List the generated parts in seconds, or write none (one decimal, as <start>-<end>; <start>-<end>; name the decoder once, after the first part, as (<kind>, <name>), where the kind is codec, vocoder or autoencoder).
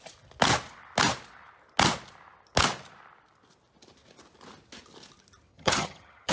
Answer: 5.5-6.3 (vocoder, HiFi-GAN)